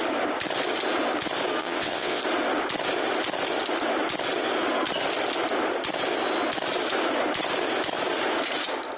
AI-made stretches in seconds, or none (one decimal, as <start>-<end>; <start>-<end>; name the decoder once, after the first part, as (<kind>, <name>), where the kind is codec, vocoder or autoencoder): 1.6-2.2 (vocoder, WaveNeXt)